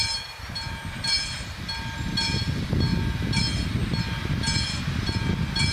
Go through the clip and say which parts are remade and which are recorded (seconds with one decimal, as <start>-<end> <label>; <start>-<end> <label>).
0.0-5.7 recorded